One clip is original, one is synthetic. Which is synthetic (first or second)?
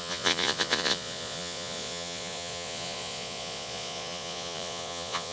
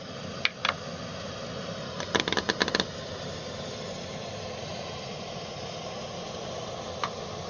first